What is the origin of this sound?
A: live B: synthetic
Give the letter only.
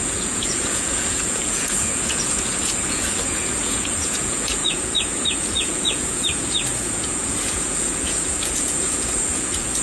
B